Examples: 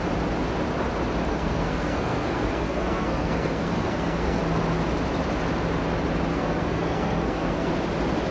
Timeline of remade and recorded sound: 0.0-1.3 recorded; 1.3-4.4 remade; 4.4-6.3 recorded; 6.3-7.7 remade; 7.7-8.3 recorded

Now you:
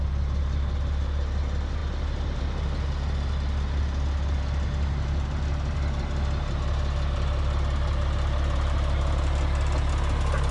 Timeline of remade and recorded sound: 0.0-10.5 recorded

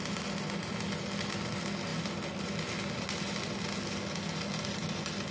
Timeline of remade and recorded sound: 0.0-5.3 recorded

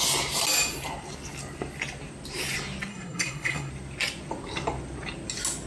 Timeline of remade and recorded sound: 0.0-2.9 recorded; 2.9-3.7 remade; 3.7-5.7 recorded